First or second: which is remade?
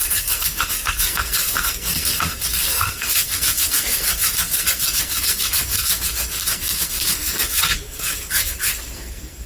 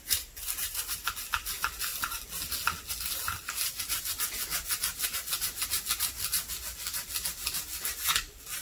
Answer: first